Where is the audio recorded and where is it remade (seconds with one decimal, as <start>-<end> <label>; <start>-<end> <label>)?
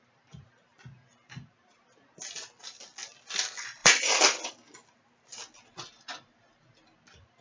0.0-3.8 recorded; 3.8-4.5 remade; 4.5-7.4 recorded